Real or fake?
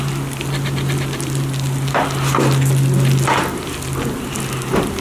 real